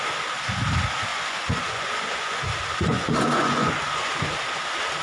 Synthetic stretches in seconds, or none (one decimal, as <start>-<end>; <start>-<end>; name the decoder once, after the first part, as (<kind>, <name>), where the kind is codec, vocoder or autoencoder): 1.1-2.4 (vocoder, Vocos); 2.9-4.1